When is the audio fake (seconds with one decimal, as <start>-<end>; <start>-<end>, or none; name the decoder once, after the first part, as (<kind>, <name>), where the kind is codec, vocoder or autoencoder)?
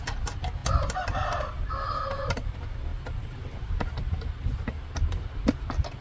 none